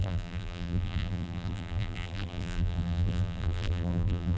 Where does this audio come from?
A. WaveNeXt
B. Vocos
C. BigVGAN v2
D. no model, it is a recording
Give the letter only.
C